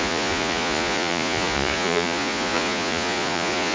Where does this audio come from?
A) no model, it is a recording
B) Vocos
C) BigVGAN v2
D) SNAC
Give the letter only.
B